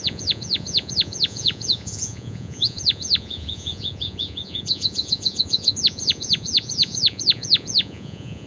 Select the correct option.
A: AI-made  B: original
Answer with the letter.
A